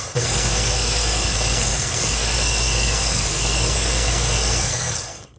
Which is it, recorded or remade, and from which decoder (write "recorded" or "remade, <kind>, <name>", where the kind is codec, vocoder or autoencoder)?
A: remade, codec, SNAC